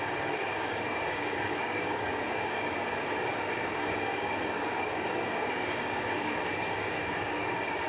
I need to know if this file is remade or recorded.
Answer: remade